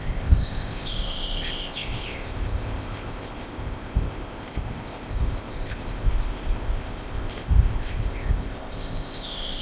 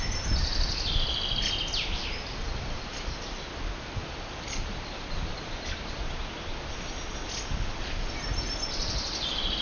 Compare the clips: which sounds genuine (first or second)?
second